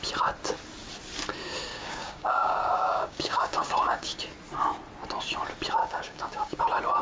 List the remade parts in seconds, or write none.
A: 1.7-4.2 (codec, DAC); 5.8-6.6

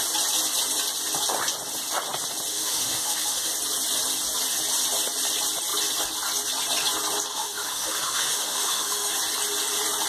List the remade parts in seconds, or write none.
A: 2.5-3.5 (autoencoder, DAC-VAE); 7.3-9.1

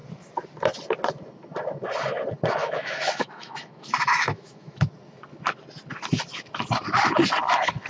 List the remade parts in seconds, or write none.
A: 2.6-4.9 (autoencoder, DAC-VAE)

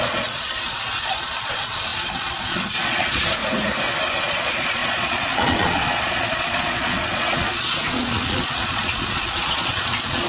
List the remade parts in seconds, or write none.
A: 0.0-3.4 (vocoder, Vocos); 4.3-10.3

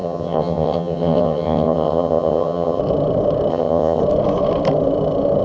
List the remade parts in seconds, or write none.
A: 0.0-2.8 (vocoder, HiFi-GAN); 3.5-4.0

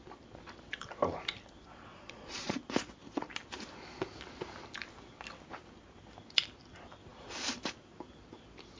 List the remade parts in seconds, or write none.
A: 1.9-2.6 (vocoder, Vocos)